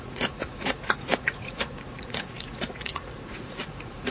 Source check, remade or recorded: remade